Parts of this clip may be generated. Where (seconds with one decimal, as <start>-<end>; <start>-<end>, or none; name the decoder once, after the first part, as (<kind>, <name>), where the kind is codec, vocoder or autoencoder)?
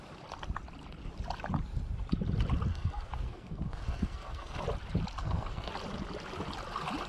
2.7-4.6 (codec, SNAC); 5.2-5.7